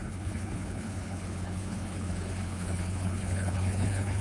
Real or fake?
fake